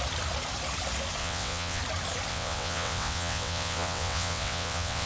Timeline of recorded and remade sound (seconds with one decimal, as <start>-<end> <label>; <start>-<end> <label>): 0.0-1.2 recorded; 1.2-1.8 remade; 1.8-2.3 recorded; 2.3-5.1 remade